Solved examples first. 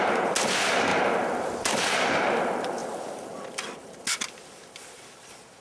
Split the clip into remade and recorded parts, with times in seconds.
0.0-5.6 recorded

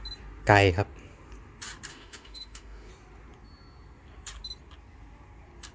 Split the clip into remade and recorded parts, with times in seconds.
0.0-1.9 recorded; 1.9-2.9 remade; 2.9-5.7 recorded

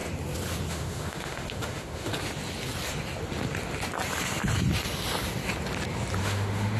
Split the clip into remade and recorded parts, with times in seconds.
0.0-0.7 recorded; 0.7-2.1 remade; 2.1-6.2 recorded; 6.2-6.8 remade

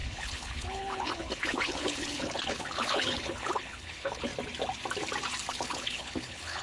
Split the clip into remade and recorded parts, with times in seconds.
0.0-4.3 remade; 4.3-5.5 recorded; 5.5-6.6 remade

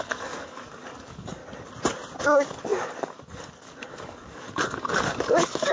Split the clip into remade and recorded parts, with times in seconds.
0.0-1.4 remade; 1.4-2.2 recorded; 2.2-5.7 remade

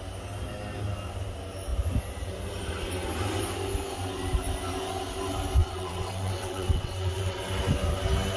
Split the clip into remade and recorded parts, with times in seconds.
0.0-5.6 recorded; 5.6-7.5 remade; 7.5-8.4 recorded

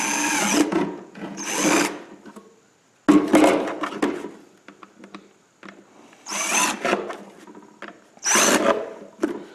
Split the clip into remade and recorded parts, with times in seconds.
0.0-0.7 recorded; 0.7-1.4 remade; 1.4-9.5 recorded